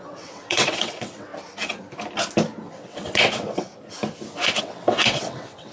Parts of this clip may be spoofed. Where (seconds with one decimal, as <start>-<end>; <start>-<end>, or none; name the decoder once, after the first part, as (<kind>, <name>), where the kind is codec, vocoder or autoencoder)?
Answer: 0.0-1.3 (vocoder, WaveNeXt); 2.7-3.7; 4.6-5.7

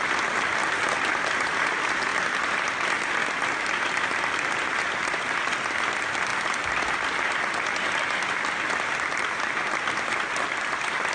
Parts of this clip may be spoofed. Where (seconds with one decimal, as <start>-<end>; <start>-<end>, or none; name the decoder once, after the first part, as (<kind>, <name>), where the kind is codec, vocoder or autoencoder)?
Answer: none

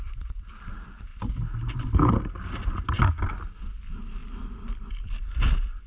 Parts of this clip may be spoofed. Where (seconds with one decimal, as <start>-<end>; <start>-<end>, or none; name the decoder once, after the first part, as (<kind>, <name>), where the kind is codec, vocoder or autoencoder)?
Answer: none

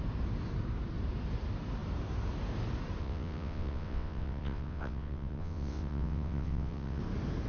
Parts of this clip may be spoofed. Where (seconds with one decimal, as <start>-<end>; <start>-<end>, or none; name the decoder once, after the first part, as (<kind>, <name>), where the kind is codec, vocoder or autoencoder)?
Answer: 3.0-7.0 (vocoder, WaveNeXt)